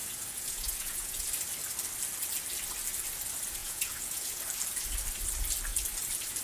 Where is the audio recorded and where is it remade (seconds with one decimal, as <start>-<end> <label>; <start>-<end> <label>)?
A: 0.0-1.2 remade; 1.2-3.6 recorded; 3.6-4.4 remade; 4.4-6.4 recorded